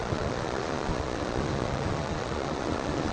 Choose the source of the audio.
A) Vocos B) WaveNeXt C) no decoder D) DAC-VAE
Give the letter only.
A